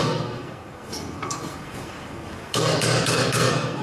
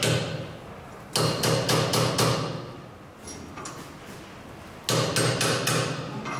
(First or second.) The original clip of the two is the second